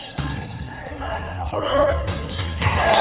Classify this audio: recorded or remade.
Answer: remade